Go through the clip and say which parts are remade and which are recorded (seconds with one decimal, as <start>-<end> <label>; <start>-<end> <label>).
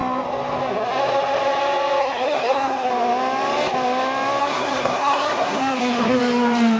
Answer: 0.0-2.0 recorded; 2.0-2.9 remade; 2.9-4.4 recorded; 4.4-6.2 remade; 6.2-6.8 recorded